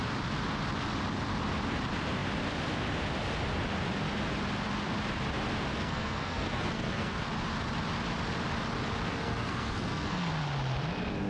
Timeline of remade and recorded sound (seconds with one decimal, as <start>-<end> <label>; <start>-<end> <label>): 0.0-5.7 recorded; 5.7-7.2 remade; 7.2-9.1 recorded; 9.1-10.3 remade; 10.3-11.3 recorded